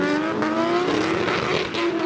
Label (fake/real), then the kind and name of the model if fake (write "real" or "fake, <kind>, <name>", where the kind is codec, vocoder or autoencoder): real